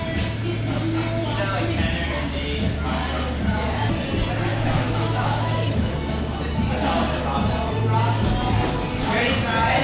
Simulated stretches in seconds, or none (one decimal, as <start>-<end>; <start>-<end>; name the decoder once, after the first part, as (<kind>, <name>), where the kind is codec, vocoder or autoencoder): 4.5-5.9 (autoencoder, DAC-VAE)